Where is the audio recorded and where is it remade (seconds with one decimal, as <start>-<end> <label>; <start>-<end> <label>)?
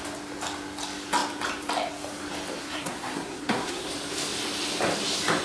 0.0-2.6 recorded; 2.6-3.9 remade; 3.9-5.4 recorded